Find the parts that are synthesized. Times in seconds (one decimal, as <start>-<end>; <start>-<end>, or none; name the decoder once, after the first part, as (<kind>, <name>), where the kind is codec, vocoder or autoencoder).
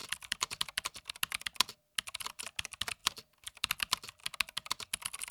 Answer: 0.0-1.1 (vocoder, BigVGAN v2); 3.0-3.7